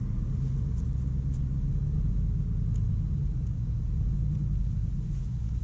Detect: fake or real real